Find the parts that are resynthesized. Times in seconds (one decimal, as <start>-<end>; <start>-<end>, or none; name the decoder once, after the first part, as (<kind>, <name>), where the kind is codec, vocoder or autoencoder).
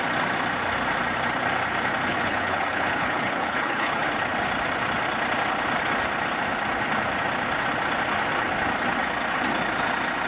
2.1-4.0 (codec, HILCodec)